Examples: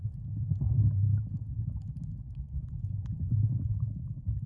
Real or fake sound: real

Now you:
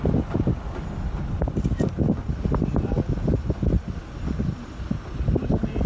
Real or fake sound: real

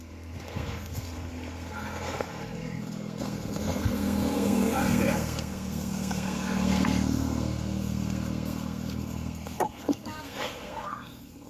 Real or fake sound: fake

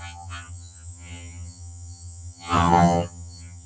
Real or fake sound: fake